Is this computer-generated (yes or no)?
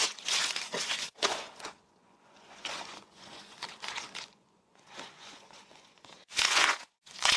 yes